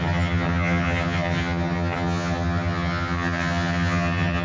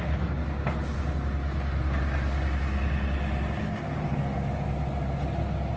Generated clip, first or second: first